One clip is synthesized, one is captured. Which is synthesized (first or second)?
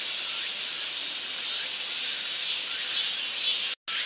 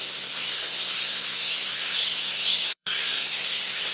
second